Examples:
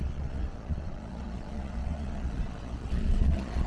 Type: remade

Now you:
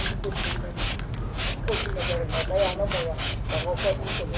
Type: recorded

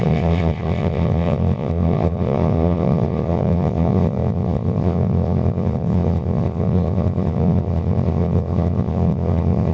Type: remade